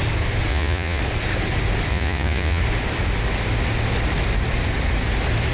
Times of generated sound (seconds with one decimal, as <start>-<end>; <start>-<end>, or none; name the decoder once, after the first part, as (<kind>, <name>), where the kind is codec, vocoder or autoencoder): 0.5-1.0 (vocoder, Vocos); 1.9-2.6